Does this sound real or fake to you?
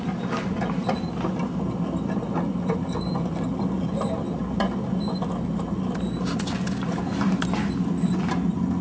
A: real